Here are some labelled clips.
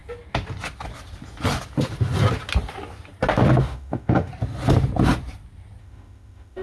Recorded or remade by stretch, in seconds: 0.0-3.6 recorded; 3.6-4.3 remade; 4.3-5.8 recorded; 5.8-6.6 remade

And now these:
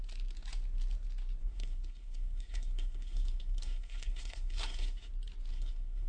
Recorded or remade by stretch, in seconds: 0.0-1.4 recorded; 1.4-5.1 remade; 5.1-5.5 recorded; 5.5-6.1 remade

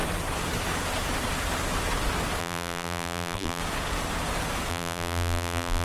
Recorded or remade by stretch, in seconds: 0.0-2.4 recorded; 2.4-3.6 remade; 3.6-4.7 recorded; 4.7-5.8 remade

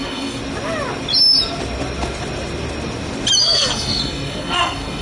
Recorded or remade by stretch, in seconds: 0.0-0.4 remade; 0.4-3.4 recorded; 3.4-5.0 remade

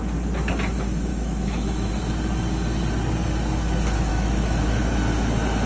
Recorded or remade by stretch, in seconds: 0.0-1.1 recorded; 1.1-1.9 remade; 1.9-4.1 recorded; 4.1-4.8 remade; 4.8-5.7 recorded

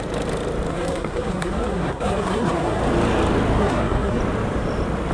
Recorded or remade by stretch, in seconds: 0.0-0.7 recorded; 0.7-2.8 remade; 2.8-3.6 recorded; 3.6-4.2 remade; 4.2-5.1 recorded